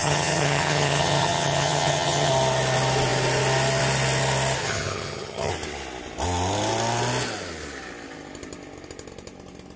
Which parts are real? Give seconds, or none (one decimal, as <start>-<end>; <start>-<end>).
2.3-4.6; 5.5-9.8